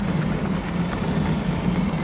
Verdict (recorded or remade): recorded